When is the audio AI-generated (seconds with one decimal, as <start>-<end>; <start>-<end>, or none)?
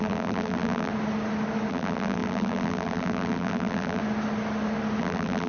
0.0-0.9; 1.7-4.0; 5.0-5.5